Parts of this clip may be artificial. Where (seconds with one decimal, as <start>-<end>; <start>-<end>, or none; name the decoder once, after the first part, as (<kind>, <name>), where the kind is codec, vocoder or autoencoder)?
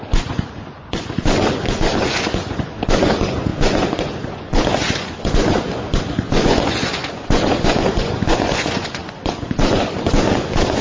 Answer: 0.0-10.8 (vocoder, Vocos)